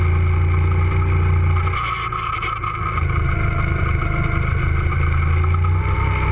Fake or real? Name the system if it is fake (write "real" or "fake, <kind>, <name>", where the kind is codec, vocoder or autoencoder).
real